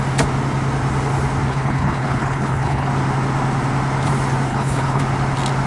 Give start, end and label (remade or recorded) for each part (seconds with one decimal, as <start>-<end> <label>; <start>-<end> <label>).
0.0-1.5 recorded; 1.5-2.9 remade; 2.9-4.5 recorded; 4.5-5.0 remade; 5.0-5.7 recorded